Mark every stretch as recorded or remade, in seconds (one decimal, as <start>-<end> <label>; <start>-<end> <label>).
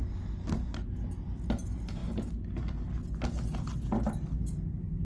0.0-5.0 recorded